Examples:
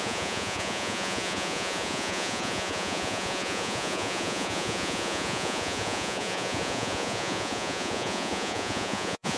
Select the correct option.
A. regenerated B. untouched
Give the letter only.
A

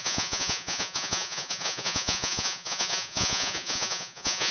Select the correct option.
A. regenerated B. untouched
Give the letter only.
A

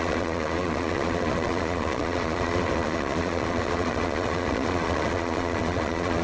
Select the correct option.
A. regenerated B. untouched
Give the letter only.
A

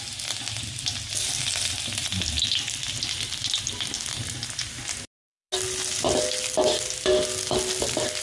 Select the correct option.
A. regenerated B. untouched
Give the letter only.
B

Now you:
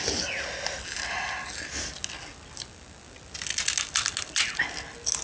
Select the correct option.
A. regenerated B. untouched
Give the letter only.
B